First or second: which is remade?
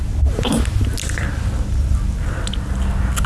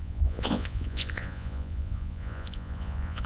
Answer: second